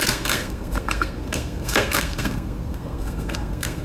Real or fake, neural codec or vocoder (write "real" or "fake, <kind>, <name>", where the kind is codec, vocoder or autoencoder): fake, codec, SNAC